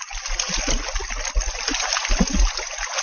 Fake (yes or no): no